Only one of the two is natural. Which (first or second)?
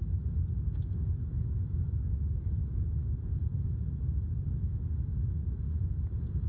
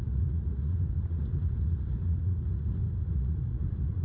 first